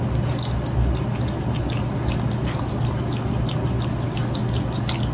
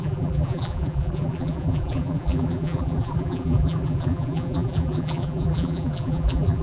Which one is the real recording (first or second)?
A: first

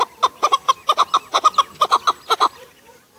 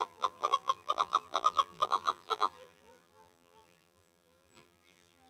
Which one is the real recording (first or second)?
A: first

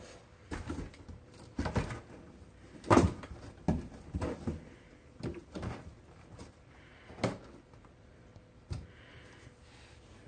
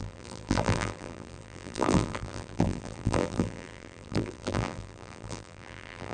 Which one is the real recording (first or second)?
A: first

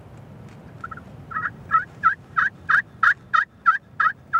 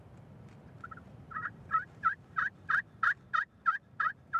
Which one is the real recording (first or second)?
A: first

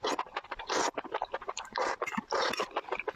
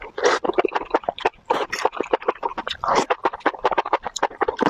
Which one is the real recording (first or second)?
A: first